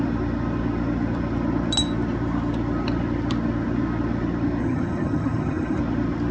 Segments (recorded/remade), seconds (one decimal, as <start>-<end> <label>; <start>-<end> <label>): 0.0-4.6 recorded; 4.6-5.8 remade; 5.8-6.3 recorded